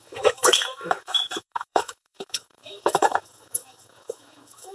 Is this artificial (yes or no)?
yes